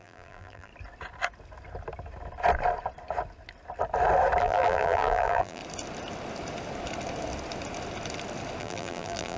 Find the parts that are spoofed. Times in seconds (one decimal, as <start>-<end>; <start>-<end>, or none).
0.0-0.7; 4.4-5.6; 8.6-9.4